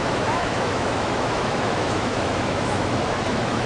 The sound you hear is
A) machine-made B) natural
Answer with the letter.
A